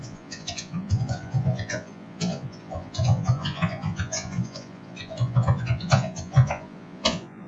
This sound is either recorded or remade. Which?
remade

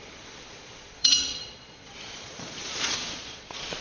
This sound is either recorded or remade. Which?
remade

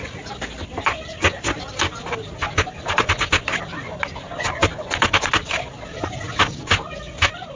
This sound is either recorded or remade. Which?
recorded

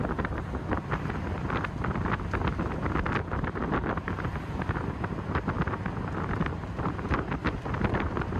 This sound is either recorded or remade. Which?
recorded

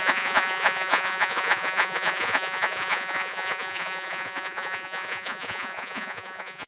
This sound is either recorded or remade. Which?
remade